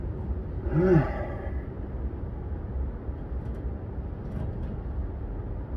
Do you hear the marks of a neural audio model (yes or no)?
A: no